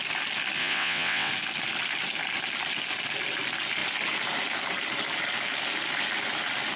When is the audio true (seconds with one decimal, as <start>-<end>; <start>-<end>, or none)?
0.0-0.6; 1.3-6.8